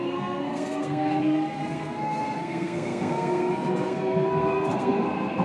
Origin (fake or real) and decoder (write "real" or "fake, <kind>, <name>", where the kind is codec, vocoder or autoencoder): fake, codec, SNAC